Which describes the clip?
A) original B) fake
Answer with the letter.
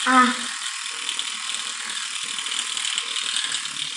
A